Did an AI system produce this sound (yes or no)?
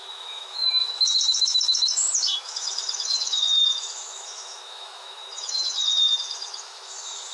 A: yes